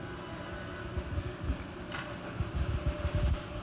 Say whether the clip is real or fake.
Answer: real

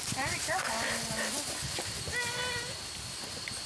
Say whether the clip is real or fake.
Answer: real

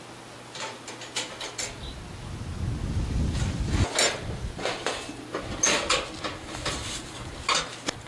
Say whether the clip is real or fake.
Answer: real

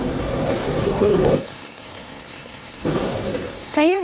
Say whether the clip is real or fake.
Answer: fake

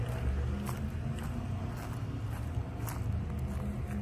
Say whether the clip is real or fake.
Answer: real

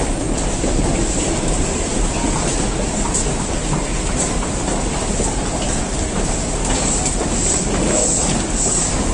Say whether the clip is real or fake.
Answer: real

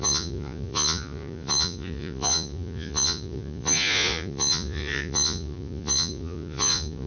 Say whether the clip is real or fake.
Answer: fake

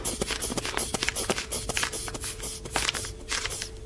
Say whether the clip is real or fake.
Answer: real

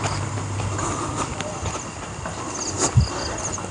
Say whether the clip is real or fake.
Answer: real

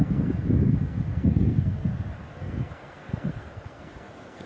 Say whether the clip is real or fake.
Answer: fake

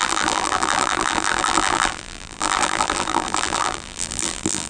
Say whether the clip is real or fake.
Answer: fake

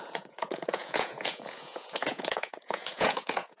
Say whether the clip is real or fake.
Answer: fake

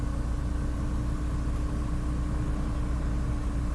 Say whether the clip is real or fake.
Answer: real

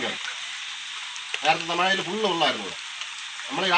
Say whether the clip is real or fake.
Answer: real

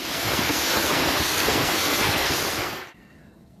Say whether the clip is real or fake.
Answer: fake